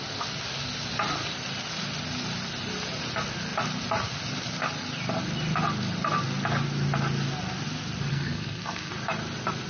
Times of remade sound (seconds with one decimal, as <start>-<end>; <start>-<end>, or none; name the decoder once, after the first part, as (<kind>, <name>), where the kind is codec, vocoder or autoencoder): 8.1-8.9 (codec, SNAC)